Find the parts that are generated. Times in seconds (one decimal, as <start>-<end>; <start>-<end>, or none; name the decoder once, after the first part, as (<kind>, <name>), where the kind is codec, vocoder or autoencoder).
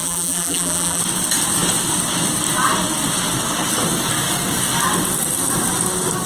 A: 0.0-1.0 (vocoder, BigVGAN v2)